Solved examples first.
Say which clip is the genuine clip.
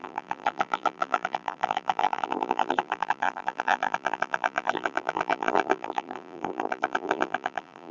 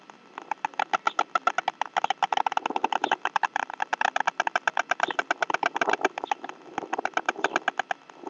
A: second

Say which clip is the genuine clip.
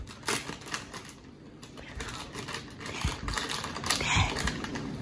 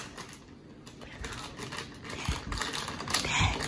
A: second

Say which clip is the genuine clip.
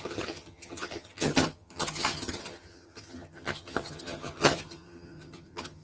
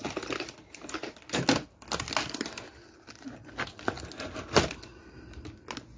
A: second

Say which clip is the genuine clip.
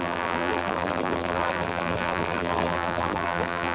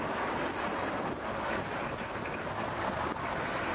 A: second